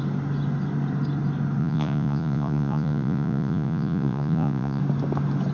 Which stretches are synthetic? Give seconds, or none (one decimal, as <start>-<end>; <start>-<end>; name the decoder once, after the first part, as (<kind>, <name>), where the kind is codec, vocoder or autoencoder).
1.6-4.8 (vocoder, Vocos)